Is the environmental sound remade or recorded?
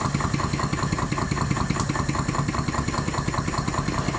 recorded